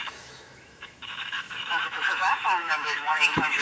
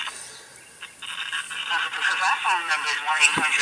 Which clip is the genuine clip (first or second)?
second